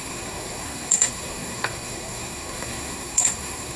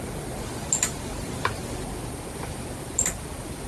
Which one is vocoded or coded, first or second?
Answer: first